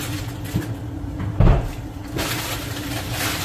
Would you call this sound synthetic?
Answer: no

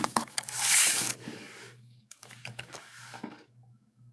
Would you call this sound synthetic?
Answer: yes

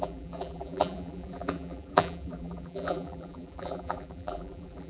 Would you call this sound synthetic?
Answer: yes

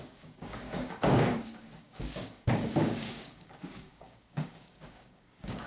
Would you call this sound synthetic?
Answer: yes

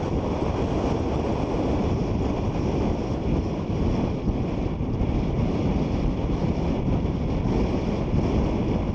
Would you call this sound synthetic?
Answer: no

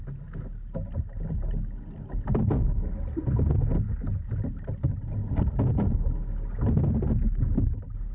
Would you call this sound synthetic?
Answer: no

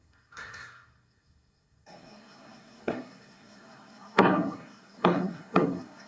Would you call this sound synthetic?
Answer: yes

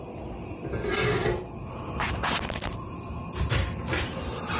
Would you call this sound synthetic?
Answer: no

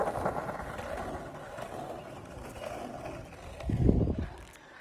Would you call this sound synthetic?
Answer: no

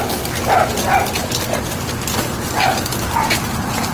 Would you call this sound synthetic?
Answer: no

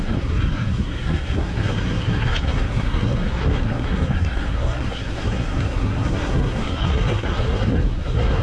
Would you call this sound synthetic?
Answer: yes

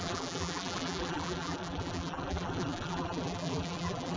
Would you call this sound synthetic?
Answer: yes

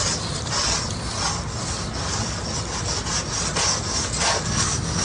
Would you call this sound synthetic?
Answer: no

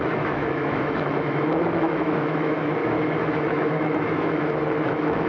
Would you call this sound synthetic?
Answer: yes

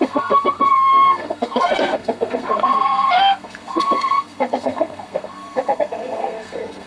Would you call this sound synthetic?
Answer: yes